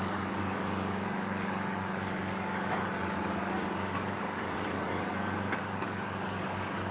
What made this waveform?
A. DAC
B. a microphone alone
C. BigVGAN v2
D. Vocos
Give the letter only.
A